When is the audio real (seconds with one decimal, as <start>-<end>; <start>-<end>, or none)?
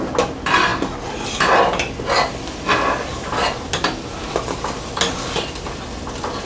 0.0-6.5